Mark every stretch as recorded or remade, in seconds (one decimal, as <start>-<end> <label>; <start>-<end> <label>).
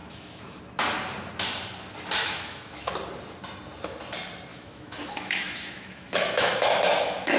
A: 0.0-0.6 remade; 0.6-2.2 recorded; 2.2-2.9 remade; 2.9-4.5 recorded; 4.5-7.4 remade